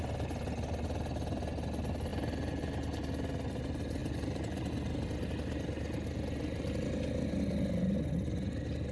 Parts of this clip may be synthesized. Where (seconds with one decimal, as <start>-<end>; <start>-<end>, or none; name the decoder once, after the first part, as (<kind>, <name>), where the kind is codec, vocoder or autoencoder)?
4.0-4.7 (vocoder, BigVGAN v2)